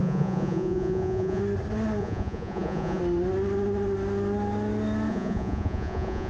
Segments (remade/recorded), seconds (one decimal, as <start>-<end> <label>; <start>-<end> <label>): 0.0-1.4 remade; 1.4-2.0 recorded; 2.0-3.0 remade; 3.0-5.1 recorded; 5.1-6.3 remade